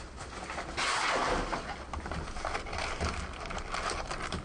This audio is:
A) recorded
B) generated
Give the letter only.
A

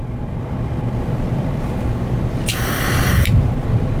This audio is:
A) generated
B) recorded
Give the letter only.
B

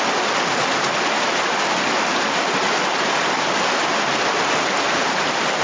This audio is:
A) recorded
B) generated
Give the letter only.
A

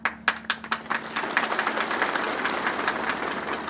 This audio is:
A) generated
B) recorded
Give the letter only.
B